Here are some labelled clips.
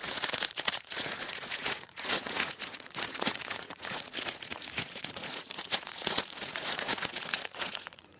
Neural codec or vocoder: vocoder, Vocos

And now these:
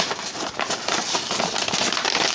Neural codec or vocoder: none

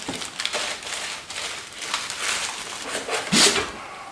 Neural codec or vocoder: none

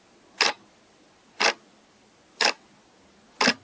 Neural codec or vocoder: none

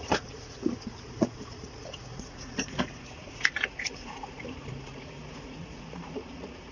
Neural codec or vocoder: vocoder, Vocos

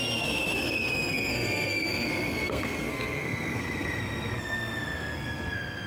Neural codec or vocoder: codec, SNAC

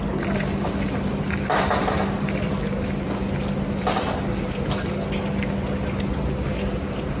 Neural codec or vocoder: none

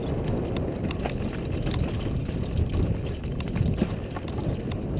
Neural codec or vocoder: none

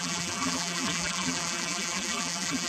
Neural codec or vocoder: vocoder, BigVGAN v2